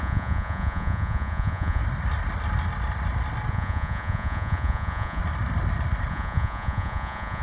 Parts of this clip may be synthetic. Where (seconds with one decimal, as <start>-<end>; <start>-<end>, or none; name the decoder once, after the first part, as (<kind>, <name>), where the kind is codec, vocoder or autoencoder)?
0.0-1.8 (vocoder, Vocos); 3.5-5.2; 6.1-7.4